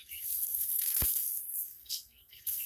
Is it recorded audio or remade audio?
remade